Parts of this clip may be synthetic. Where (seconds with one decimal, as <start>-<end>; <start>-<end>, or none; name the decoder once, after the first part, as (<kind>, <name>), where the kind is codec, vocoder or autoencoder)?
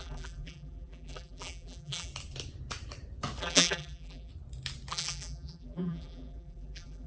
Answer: 0.0-2.1 (vocoder, BigVGAN v2); 3.4-4.3; 4.9-7.1